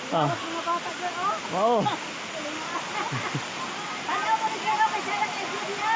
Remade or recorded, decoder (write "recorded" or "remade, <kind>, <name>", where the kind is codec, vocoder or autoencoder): recorded